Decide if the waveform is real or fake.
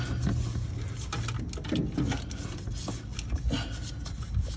real